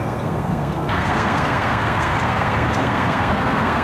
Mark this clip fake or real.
fake